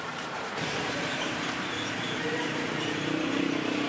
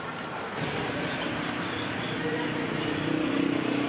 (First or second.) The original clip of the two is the second